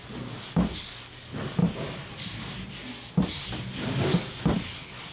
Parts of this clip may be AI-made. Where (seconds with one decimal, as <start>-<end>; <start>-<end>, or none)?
0.0-1.6